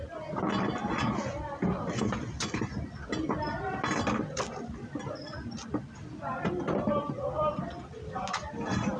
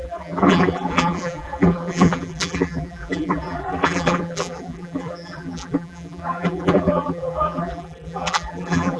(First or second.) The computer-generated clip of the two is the second